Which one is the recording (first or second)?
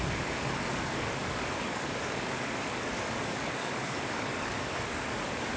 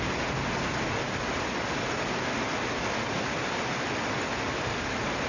second